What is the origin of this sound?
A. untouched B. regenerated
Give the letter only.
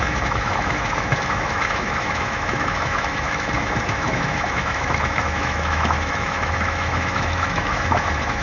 B